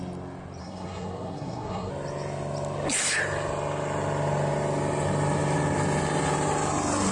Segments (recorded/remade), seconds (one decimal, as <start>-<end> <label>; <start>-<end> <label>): 0.0-0.6 recorded; 0.6-1.9 remade; 1.9-7.1 recorded